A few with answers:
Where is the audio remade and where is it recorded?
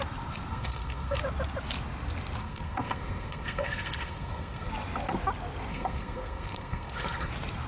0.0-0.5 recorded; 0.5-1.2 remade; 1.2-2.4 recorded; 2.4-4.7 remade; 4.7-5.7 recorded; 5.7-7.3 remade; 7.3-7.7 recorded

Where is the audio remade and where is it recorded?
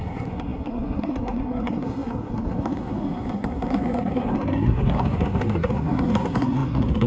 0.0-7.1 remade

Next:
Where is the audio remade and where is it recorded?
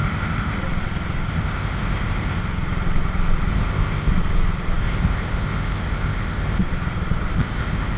0.0-0.6 remade; 0.6-1.3 recorded; 1.3-2.4 remade; 2.4-3.5 recorded; 3.5-4.1 remade; 4.1-4.8 recorded; 4.8-6.6 remade; 6.6-7.4 recorded; 7.4-8.0 remade